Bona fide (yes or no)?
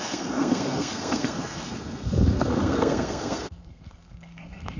no